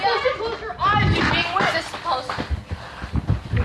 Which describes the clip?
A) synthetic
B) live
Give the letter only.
B